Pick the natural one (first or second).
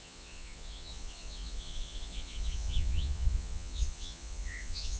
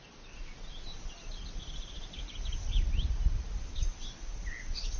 second